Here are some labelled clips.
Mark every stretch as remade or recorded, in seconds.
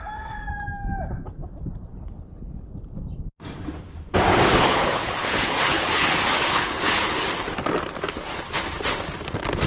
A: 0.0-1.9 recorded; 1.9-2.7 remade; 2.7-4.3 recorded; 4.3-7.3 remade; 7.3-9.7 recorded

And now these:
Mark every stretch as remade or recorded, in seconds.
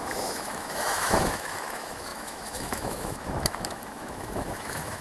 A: 0.0-5.0 remade